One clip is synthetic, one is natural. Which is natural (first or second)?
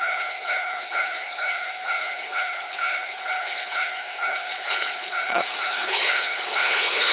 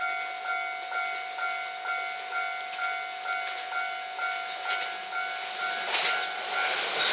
second